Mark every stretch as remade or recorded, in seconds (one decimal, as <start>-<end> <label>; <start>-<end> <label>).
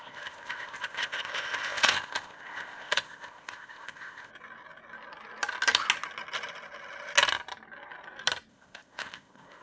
0.0-4.3 remade; 4.3-8.5 recorded; 8.5-9.6 remade